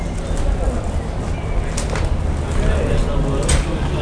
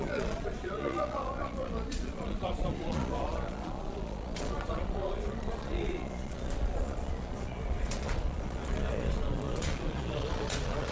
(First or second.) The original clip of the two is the first